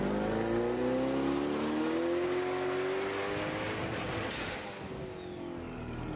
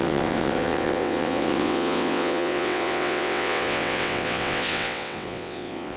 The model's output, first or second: second